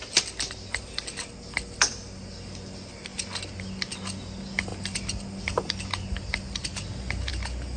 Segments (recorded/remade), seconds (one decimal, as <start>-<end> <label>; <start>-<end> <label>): 0.0-7.8 recorded